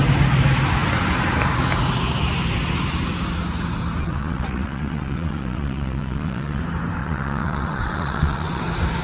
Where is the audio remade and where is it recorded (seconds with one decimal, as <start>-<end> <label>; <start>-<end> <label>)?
0.0-4.0 recorded; 4.0-6.6 remade; 6.6-7.0 recorded; 7.0-8.6 remade; 8.6-9.0 recorded